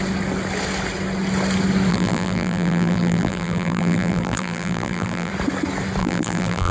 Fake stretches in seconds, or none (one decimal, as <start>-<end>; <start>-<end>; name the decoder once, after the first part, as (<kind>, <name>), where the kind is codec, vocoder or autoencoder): 1.9-5.3 (vocoder, BigVGAN v2); 6.0-6.7